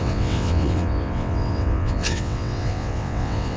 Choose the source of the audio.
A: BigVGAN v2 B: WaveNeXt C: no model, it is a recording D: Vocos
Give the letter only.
B